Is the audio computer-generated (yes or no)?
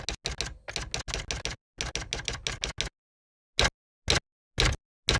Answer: no